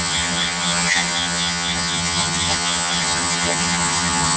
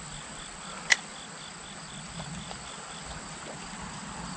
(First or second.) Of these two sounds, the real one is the second